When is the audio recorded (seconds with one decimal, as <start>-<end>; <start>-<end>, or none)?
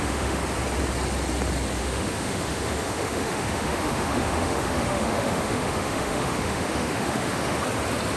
0.4-1.8; 7.6-8.2